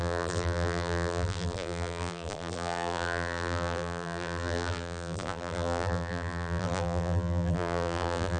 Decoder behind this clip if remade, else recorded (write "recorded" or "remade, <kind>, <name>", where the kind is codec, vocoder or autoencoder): remade, vocoder, BigVGAN v2